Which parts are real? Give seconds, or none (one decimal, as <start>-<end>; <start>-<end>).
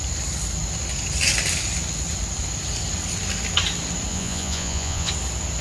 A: 0.0-4.1; 5.1-5.6